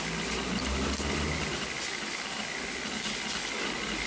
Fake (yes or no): no